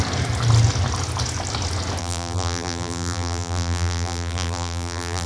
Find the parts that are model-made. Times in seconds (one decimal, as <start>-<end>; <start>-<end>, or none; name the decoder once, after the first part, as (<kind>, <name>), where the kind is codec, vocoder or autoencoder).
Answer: 2.0-5.3 (vocoder, BigVGAN v2)